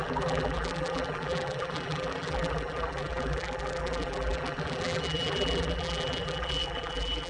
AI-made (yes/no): yes